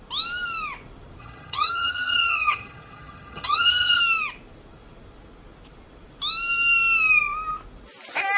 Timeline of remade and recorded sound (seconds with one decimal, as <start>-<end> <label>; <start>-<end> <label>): 0.0-1.2 recorded; 1.2-4.0 remade; 4.0-8.4 recorded